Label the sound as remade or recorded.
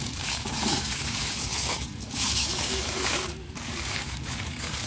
remade